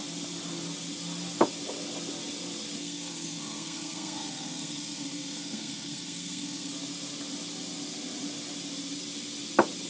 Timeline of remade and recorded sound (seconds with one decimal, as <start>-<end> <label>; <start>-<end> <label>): 0.0-2.8 recorded; 2.8-6.7 remade; 6.7-9.9 recorded